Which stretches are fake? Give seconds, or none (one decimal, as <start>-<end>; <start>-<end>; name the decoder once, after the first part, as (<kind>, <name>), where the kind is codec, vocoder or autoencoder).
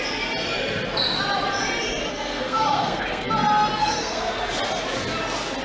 2.1-3.3 (codec, SNAC); 3.8-4.5